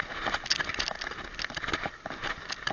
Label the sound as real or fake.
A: real